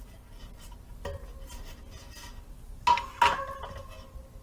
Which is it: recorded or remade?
recorded